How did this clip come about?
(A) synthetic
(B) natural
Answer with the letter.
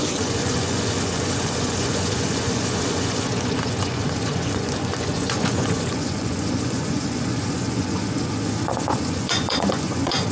A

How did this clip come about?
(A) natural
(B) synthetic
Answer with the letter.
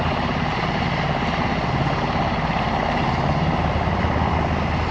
A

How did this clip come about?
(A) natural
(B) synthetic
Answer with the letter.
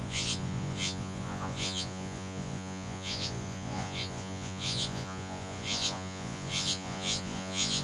B